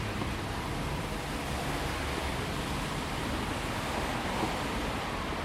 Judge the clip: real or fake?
fake